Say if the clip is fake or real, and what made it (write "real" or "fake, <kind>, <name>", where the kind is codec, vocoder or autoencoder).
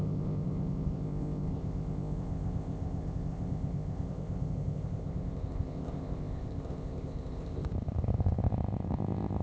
fake, codec, ZipCodec